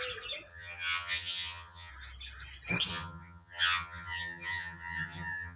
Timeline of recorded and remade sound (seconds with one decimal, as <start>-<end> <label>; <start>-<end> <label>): 0.0-0.5 recorded; 0.5-1.9 remade; 1.9-2.9 recorded; 2.9-5.6 remade